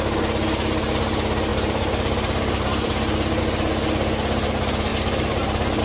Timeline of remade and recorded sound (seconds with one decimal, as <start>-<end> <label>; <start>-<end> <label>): 0.0-1.5 recorded; 1.5-3.4 remade; 3.4-4.9 recorded; 4.9-5.8 remade